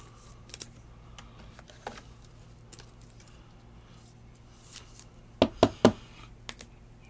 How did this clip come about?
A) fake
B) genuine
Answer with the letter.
B